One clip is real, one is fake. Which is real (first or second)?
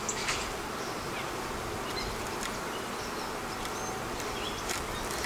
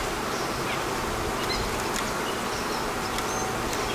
second